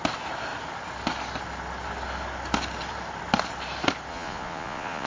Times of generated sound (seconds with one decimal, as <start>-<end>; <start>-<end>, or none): 4.1-5.1